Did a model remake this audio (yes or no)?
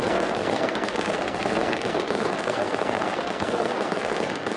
yes